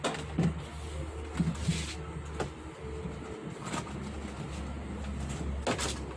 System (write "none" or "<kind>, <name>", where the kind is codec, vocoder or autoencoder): none